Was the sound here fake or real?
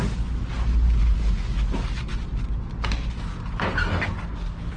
real